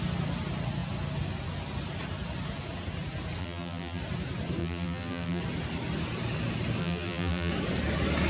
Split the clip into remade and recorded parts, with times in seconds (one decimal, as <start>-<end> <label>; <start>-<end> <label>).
0.0-3.4 recorded; 3.4-4.0 remade; 4.0-4.6 recorded; 4.6-5.4 remade; 5.4-6.8 recorded; 6.8-7.5 remade; 7.5-8.3 recorded

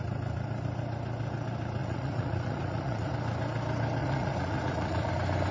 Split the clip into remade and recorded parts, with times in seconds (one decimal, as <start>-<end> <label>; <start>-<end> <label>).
0.0-1.8 recorded; 1.8-3.1 remade; 3.1-4.0 recorded; 4.0-5.1 remade; 5.1-5.5 recorded

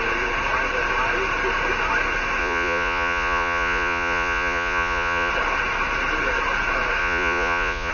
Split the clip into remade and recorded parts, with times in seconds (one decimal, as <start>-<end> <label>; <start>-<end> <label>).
0.0-2.4 recorded; 2.4-5.3 remade; 5.3-7.0 recorded; 7.0-7.9 remade